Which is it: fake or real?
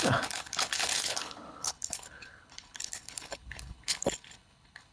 fake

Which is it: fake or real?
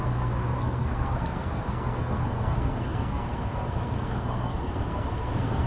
fake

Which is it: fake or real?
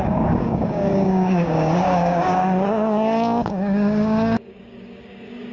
fake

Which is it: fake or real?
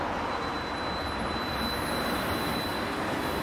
real